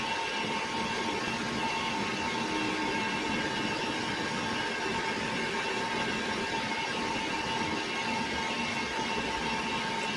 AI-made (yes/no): no